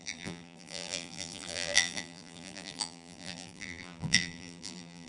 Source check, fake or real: fake